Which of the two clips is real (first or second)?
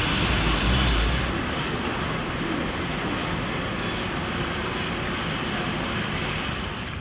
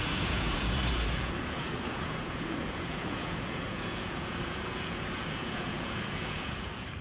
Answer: first